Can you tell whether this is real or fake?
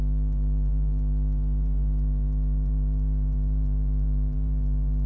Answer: fake